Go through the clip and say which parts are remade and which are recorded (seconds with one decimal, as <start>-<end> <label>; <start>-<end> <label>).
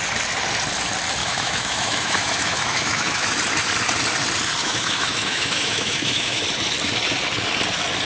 0.0-1.2 recorded; 1.2-3.3 remade; 3.3-4.6 recorded; 4.6-6.4 remade; 6.4-8.0 recorded